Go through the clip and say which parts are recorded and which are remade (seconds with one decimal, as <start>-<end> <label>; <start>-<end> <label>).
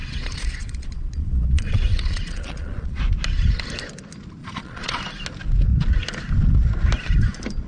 0.0-3.0 remade; 3.0-4.4 recorded; 4.4-5.0 remade; 5.0-7.7 recorded